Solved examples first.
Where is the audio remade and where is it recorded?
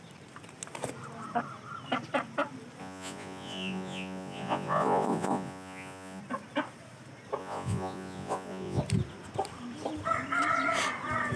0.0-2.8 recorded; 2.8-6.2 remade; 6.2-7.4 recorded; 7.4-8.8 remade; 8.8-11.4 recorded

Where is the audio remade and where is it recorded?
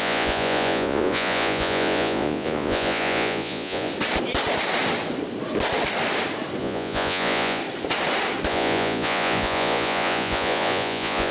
0.0-3.9 remade; 3.9-6.6 recorded; 6.6-7.6 remade; 7.6-8.5 recorded; 8.5-11.3 remade